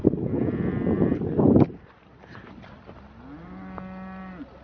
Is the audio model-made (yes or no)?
no